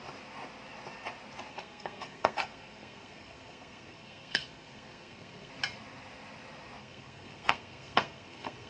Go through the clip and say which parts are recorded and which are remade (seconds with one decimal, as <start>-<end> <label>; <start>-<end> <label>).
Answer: 0.0-1.5 recorded; 1.5-5.5 remade; 5.5-6.8 recorded; 6.8-8.7 remade